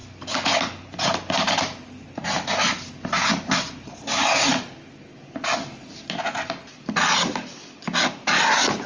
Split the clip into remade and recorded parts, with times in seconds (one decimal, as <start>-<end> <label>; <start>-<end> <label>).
0.0-8.9 recorded

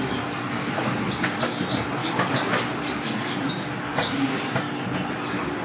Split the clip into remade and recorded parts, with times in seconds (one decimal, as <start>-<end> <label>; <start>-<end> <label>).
0.0-0.6 recorded; 0.6-1.6 remade; 1.6-3.9 recorded; 3.9-4.4 remade; 4.4-5.6 recorded

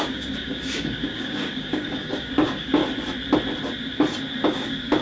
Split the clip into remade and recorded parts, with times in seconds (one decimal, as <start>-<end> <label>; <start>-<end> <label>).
0.0-2.8 remade; 2.8-4.4 recorded; 4.4-5.0 remade